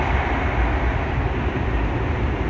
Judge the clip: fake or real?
real